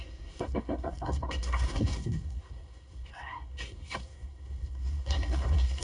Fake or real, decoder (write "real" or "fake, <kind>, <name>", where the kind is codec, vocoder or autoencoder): fake, codec, SNAC